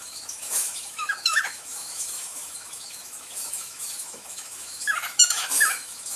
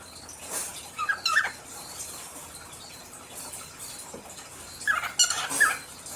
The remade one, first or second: first